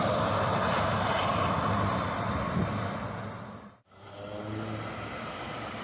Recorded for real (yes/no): yes